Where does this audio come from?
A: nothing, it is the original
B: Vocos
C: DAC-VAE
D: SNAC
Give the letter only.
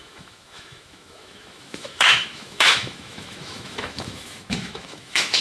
C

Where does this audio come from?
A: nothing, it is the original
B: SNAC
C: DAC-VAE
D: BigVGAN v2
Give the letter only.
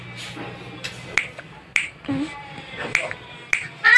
A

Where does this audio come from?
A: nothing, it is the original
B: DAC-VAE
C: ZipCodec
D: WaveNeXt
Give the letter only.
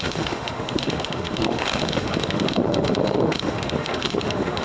B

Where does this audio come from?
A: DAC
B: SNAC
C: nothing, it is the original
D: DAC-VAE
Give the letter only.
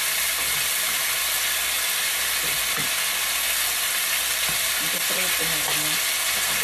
C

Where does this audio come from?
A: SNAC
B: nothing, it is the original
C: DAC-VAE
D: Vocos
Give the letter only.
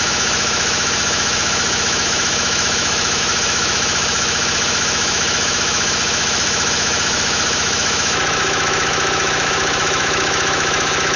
C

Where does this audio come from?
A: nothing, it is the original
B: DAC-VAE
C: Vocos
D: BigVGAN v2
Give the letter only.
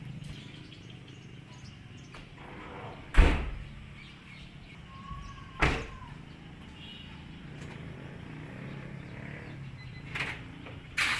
A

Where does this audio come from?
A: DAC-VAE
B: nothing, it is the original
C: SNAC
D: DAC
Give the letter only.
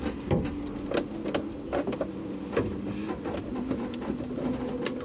B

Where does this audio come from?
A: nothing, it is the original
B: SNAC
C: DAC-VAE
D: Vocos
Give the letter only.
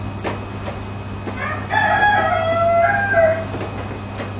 A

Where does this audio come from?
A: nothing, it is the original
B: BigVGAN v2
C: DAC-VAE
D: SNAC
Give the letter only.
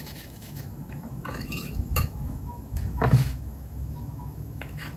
C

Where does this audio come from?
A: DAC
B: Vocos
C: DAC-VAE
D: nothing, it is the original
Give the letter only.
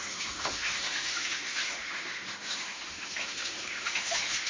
C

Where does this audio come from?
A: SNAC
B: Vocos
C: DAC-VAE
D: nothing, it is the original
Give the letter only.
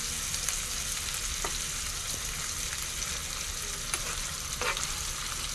D